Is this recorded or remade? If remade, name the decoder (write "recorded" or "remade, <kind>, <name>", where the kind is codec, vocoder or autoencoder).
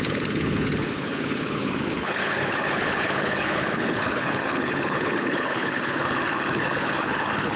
remade, codec, HILCodec